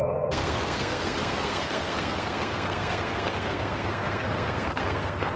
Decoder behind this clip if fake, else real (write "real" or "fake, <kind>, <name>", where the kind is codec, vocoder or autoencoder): fake, codec, SNAC